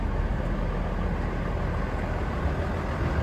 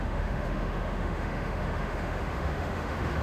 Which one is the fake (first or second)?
second